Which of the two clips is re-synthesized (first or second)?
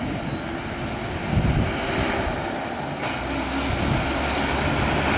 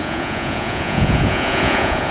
second